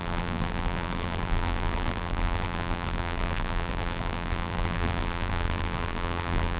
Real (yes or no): no